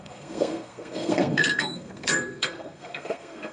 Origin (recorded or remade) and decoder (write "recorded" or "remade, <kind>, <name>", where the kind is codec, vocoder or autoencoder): remade, codec, SNAC